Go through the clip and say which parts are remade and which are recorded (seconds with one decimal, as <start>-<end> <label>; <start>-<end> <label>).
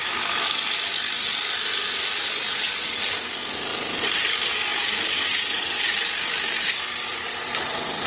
0.0-3.7 recorded; 3.7-4.5 remade; 4.5-5.3 recorded; 5.3-8.1 remade